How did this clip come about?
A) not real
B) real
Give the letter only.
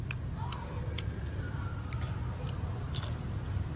B